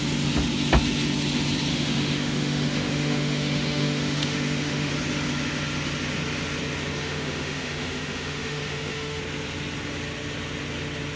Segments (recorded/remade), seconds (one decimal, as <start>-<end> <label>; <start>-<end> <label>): 0.0-1.7 recorded; 1.7-4.9 remade; 4.9-7.0 recorded; 7.0-9.2 remade; 9.2-11.2 recorded